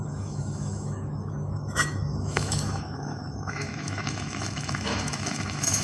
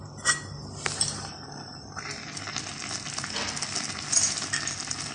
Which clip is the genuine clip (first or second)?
second